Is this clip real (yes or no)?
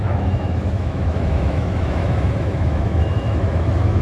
no